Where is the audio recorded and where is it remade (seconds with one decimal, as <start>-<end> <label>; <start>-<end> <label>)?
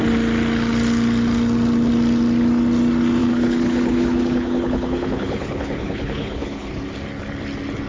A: 0.0-3.2 recorded; 3.2-6.7 remade; 6.7-7.9 recorded